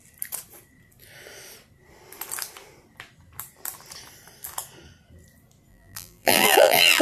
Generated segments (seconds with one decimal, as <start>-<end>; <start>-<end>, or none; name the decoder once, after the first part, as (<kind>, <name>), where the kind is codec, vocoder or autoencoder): 5.7-7.0 (vocoder, BigVGAN v2)